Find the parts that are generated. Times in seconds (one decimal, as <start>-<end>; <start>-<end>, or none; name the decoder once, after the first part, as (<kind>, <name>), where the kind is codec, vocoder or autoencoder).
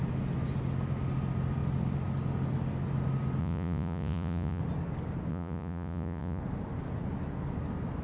3.4-4.6 (vocoder, Vocos); 5.3-6.4